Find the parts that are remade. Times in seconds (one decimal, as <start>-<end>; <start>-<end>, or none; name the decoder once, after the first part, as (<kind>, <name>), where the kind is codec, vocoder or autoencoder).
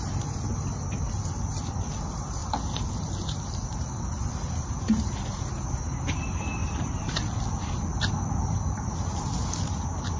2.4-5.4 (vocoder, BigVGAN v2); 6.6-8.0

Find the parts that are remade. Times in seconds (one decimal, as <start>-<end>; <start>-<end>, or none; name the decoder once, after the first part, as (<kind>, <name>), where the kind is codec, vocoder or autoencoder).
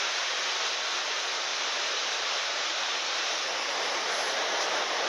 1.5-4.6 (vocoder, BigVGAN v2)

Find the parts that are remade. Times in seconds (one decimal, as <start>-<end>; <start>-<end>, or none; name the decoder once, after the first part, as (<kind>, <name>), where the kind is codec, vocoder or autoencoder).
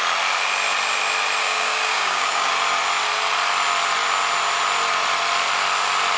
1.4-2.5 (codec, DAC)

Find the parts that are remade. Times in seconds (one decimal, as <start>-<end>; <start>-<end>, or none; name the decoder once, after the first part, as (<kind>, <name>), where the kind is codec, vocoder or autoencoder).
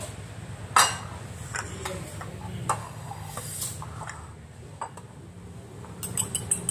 2.8-3.6 (codec, DAC)